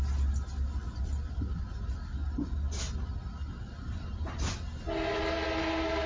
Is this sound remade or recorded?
recorded